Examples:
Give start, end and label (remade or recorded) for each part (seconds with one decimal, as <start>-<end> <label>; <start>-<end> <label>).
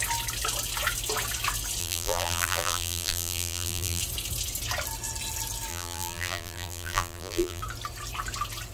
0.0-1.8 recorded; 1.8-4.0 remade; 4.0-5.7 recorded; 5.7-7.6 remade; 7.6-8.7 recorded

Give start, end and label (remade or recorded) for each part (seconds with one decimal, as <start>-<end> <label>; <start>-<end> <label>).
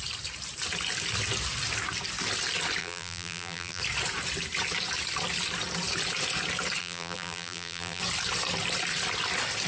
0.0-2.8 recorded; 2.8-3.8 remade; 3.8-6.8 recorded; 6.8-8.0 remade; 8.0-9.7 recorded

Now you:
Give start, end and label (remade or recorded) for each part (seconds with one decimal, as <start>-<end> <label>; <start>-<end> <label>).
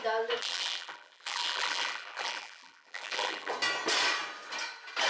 0.0-0.4 recorded; 0.4-3.5 remade; 3.5-5.1 recorded